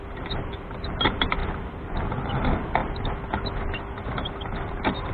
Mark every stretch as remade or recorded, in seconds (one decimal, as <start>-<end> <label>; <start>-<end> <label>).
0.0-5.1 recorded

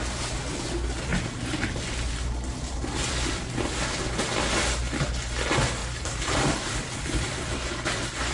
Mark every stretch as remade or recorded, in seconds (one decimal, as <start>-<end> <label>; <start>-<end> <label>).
0.0-5.8 recorded; 5.8-8.3 remade

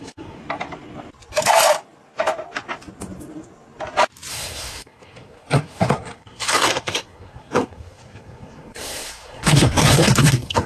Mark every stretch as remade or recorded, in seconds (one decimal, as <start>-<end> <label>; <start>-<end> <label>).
0.0-0.4 remade; 0.4-4.3 recorded; 4.3-10.7 remade

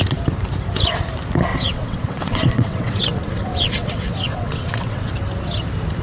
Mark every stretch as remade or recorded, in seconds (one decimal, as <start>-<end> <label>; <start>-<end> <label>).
0.0-1.5 recorded; 1.5-5.1 remade; 5.1-6.0 recorded

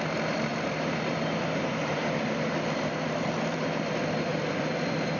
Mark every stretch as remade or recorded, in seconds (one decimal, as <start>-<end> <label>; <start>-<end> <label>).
0.0-0.5 recorded; 0.5-3.6 remade; 3.6-4.3 recorded; 4.3-5.2 remade

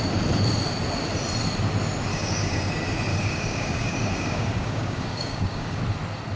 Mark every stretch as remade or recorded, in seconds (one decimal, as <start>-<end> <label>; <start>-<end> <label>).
0.0-2.1 recorded; 2.1-2.7 remade; 2.7-3.1 recorded; 3.1-5.8 remade; 5.8-6.4 recorded

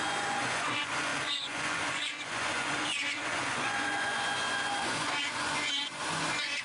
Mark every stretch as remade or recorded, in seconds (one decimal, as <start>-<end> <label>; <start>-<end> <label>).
0.0-6.6 remade